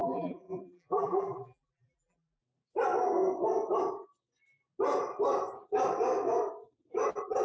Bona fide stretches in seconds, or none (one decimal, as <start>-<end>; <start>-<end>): 2.4-7.4